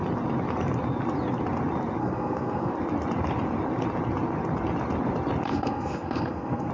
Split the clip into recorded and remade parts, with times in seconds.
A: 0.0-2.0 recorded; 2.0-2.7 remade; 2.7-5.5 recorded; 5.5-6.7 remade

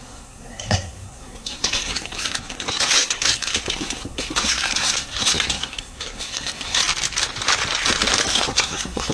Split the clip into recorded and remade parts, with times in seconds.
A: 0.0-6.8 remade; 6.8-8.3 recorded; 8.3-9.1 remade

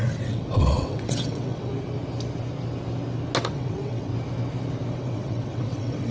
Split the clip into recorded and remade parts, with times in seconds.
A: 0.0-1.7 remade; 1.7-3.5 recorded; 3.5-4.1 remade; 4.1-4.9 recorded; 4.9-6.1 remade

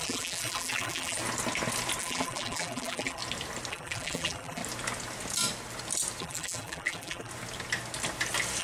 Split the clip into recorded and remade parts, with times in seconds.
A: 0.0-1.2 remade; 1.2-2.0 recorded; 2.0-3.2 remade; 3.2-3.7 recorded; 3.7-4.6 remade; 4.6-6.2 recorded; 6.2-7.3 remade; 7.3-8.6 recorded

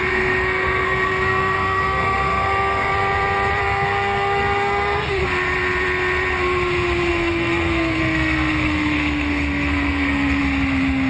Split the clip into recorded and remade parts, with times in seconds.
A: 0.0-2.9 remade; 2.9-3.6 recorded; 3.6-5.2 remade; 5.2-7.1 recorded; 7.1-10.4 remade; 10.4-11.1 recorded